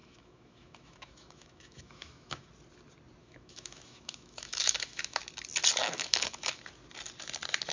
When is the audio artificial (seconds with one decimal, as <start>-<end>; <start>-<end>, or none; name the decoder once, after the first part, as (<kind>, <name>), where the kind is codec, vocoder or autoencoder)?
0.0-2.5 (autoencoder, DAC-VAE); 3.2-5.2; 5.8-6.6